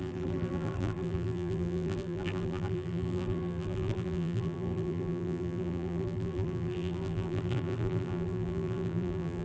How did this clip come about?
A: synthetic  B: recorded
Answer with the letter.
A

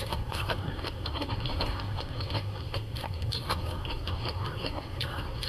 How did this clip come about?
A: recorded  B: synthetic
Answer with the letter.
B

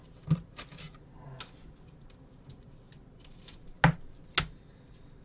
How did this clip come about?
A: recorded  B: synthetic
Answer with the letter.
A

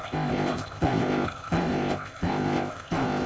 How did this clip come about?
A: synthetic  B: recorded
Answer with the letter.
A